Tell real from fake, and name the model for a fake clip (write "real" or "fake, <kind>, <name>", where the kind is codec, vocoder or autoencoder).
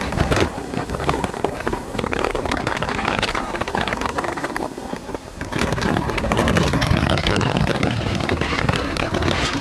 fake, codec, SNAC